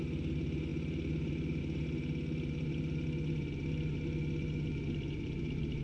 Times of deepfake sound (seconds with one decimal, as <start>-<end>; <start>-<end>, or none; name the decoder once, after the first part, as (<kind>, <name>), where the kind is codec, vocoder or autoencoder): none